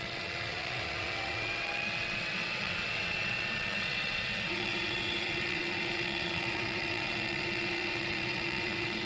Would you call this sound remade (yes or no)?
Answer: yes